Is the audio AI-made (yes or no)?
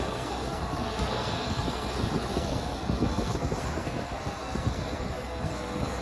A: yes